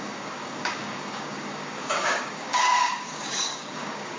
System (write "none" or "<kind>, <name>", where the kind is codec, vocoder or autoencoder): codec, DAC